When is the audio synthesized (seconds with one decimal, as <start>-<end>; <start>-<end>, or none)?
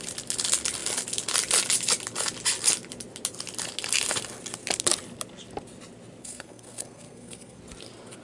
6.2-7.6